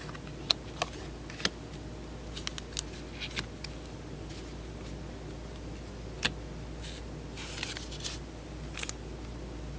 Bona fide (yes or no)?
yes